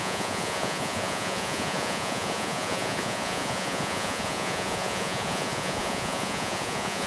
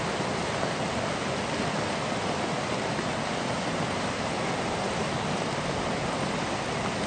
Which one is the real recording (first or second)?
second